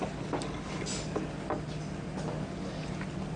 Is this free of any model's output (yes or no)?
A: yes